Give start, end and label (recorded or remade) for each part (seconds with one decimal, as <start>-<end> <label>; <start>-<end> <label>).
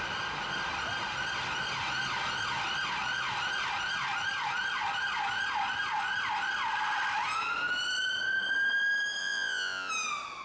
0.0-9.2 recorded; 9.2-9.9 remade; 9.9-10.4 recorded